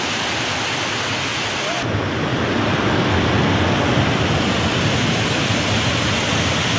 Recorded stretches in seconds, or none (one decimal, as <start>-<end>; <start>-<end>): 0.0-6.8